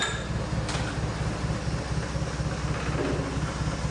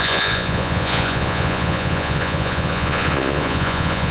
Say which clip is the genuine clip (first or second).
first